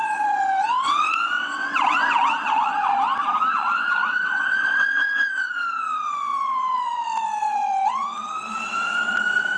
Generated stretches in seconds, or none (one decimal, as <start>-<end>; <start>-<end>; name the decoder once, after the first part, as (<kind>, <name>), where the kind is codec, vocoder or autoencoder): 0.0-2.9 (vocoder, WaveNeXt); 3.5-9.6